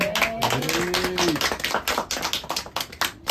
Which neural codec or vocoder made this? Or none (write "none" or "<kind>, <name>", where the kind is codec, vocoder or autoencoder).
none